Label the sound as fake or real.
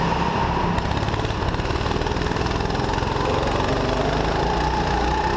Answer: real